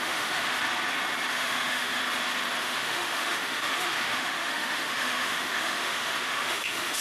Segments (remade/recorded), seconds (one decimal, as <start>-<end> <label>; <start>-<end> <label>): 0.0-0.6 remade; 0.6-1.3 recorded; 1.3-2.0 remade; 2.0-2.6 recorded; 2.6-7.0 remade